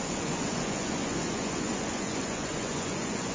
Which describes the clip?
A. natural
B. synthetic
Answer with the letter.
B